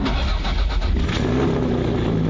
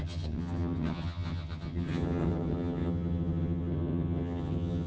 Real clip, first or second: first